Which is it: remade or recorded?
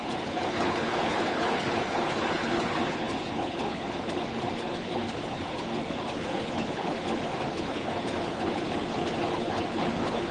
remade